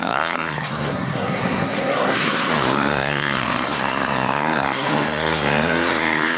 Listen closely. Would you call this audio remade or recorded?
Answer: remade